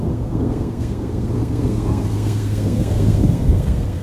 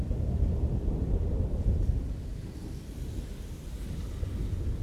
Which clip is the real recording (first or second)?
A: second